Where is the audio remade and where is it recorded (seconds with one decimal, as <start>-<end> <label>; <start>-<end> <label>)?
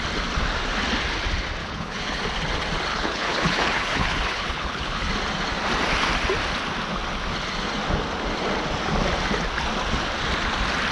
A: 0.0-1.6 recorded; 1.6-2.2 remade; 2.2-2.9 recorded; 2.9-5.1 remade; 5.1-10.9 recorded